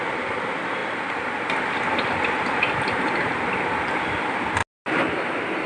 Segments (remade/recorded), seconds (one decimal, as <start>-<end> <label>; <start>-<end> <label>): 0.0-5.7 recorded